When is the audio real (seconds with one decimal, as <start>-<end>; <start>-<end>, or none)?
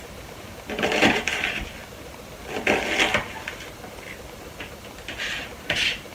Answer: 1.8-5.5